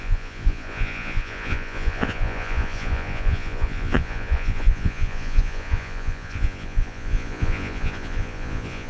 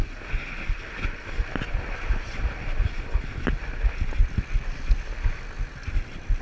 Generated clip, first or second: first